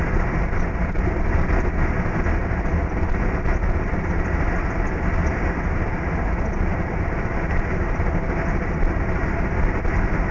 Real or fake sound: real